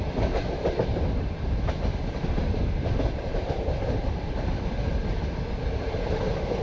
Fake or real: fake